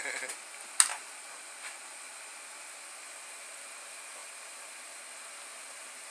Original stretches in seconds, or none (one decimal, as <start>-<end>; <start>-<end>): 0.0-6.1